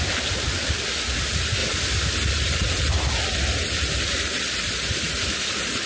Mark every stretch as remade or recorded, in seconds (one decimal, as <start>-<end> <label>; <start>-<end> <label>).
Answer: 0.0-5.9 recorded